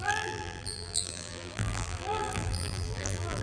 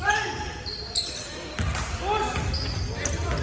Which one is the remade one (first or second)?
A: first